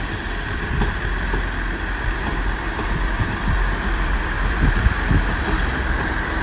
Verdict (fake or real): fake